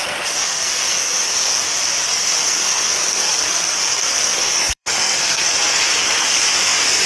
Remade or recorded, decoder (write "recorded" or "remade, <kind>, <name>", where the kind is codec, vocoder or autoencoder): remade, codec, SNAC